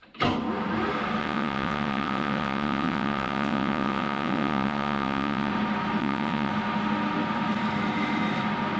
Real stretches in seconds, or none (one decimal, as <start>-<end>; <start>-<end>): 0.0-1.2; 5.5-6.0; 6.5-8.8